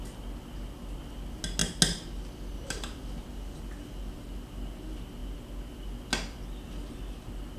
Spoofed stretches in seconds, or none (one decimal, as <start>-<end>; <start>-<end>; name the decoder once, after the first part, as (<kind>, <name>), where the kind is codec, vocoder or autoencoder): none